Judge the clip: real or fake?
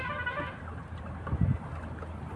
real